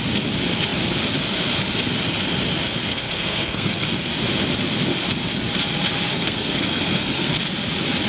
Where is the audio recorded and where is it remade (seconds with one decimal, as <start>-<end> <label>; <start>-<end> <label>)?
0.0-2.9 recorded; 2.9-4.1 remade; 4.1-6.1 recorded; 6.1-7.3 remade; 7.3-8.1 recorded